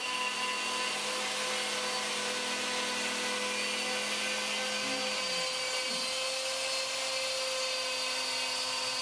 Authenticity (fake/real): real